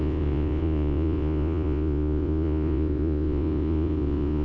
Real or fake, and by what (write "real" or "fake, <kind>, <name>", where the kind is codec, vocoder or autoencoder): fake, vocoder, Vocos